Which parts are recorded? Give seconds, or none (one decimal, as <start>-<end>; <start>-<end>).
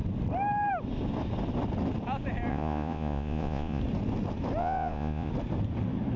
0.0-2.5; 3.8-4.6; 5.3-6.2